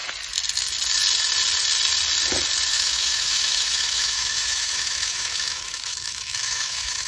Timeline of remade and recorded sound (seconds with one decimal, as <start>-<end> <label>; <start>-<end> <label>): 0.0-2.7 recorded; 2.7-7.1 remade